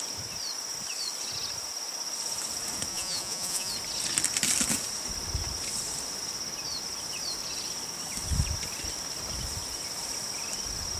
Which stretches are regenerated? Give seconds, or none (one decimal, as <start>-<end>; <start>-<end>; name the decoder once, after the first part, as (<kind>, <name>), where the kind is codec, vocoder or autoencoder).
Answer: 2.9-3.7 (vocoder, Vocos)